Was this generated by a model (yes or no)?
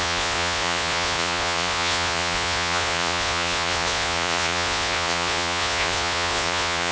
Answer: yes